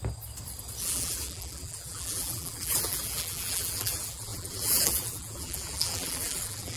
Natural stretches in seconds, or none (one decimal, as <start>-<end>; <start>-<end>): 0.0-0.8